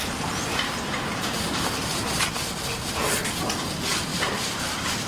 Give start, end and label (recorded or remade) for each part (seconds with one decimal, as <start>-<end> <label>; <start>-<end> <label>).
0.0-2.0 remade; 2.0-4.1 recorded; 4.1-5.1 remade